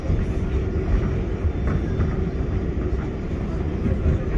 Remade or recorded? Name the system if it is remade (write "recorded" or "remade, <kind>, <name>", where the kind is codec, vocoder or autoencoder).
recorded